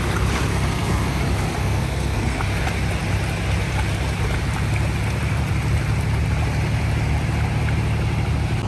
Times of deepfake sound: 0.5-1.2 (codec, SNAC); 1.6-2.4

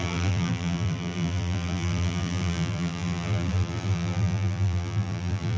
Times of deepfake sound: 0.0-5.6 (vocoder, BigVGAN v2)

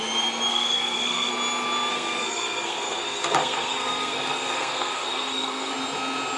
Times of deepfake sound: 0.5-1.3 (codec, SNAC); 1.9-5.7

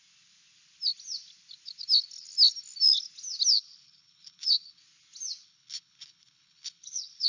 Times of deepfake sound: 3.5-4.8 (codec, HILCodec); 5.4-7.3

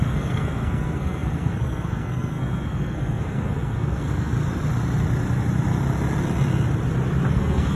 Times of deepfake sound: 0.0-4.3 (codec, SNAC); 7.3-7.7

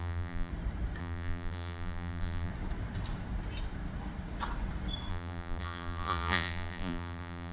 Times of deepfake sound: 0.0-0.5 (vocoder, BigVGAN v2); 1.0-2.5; 5.1-7.5